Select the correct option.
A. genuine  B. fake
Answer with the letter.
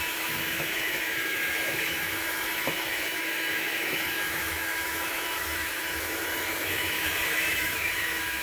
B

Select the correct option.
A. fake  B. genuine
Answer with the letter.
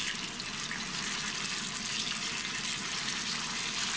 B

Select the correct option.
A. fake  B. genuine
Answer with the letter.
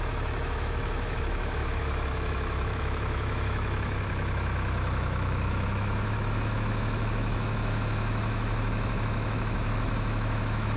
A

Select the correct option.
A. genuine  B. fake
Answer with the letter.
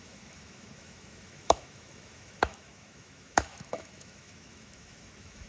B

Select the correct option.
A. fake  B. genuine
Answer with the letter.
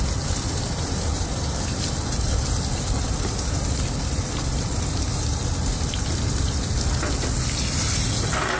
B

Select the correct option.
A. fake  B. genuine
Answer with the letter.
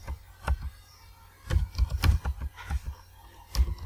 B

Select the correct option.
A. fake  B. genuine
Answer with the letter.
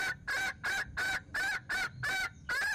B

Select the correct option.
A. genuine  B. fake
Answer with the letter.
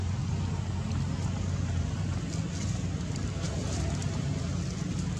A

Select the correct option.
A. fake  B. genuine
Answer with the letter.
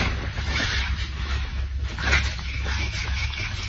A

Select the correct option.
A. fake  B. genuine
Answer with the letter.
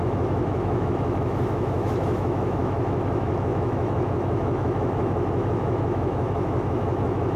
A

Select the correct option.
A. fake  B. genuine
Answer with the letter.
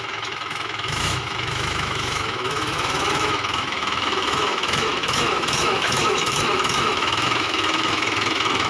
A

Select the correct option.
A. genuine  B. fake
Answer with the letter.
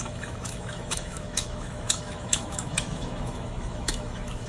B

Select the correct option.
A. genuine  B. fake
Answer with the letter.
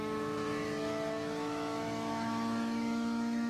B